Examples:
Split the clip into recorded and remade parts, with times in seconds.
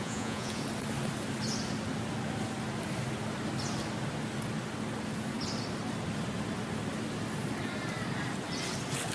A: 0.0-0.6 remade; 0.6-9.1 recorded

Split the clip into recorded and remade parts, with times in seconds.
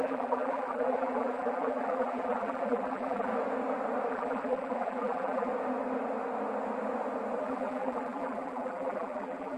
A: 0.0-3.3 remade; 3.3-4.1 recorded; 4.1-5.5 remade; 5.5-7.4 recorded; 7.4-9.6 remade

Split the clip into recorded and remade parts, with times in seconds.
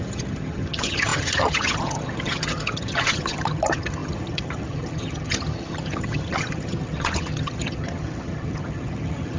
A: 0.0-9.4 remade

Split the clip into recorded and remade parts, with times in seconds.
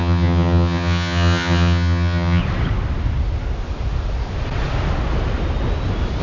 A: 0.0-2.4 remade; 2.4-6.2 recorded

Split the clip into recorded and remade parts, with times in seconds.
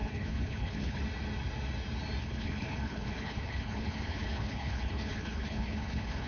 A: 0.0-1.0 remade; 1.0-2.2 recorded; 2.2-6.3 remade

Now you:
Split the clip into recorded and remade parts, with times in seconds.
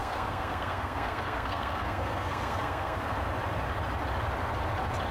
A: 0.0-3.1 remade; 3.1-5.1 recorded